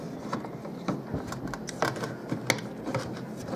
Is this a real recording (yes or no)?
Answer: yes